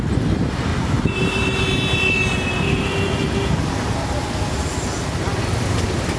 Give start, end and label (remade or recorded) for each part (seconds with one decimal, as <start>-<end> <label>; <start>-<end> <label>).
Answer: 0.0-0.7 recorded; 0.7-1.6 remade; 1.6-6.2 recorded